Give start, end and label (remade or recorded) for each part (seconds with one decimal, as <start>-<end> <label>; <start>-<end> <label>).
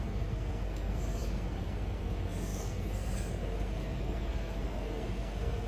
0.0-5.7 remade